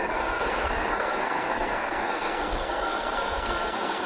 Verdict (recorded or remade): remade